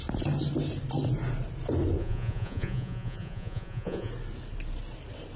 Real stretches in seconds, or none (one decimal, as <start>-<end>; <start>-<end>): 0.0-2.0; 4.1-5.4